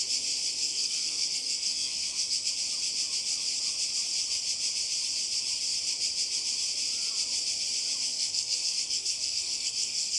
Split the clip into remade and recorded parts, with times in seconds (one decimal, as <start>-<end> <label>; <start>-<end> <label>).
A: 0.0-0.6 recorded; 0.6-2.5 remade; 2.5-8.1 recorded; 8.1-10.2 remade